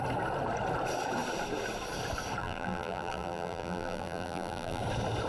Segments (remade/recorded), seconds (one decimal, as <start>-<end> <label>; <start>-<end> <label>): 0.0-2.4 recorded; 2.4-4.8 remade; 4.8-5.3 recorded

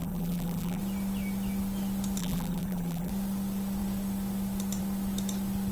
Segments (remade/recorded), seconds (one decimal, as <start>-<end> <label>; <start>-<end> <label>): 0.0-0.8 remade; 0.8-2.2 recorded; 2.2-3.1 remade; 3.1-5.7 recorded

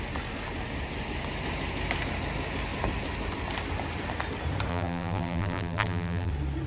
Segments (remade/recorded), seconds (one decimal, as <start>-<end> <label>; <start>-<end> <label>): 0.0-4.7 recorded; 4.7-6.3 remade; 6.3-6.7 recorded

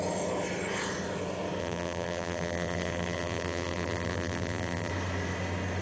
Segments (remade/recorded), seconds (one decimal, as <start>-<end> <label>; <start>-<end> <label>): 0.0-1.6 recorded; 1.6-4.9 remade; 4.9-5.8 recorded

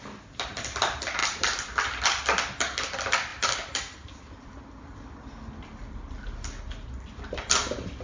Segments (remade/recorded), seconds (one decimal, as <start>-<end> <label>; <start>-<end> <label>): 0.0-1.2 recorded; 1.2-2.0 remade; 2.0-3.3 recorded; 3.3-4.5 remade; 4.5-8.0 recorded

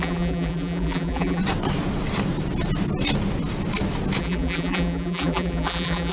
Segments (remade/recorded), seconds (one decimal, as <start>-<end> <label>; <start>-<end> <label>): 0.0-1.4 remade; 1.4-4.2 recorded; 4.2-6.1 remade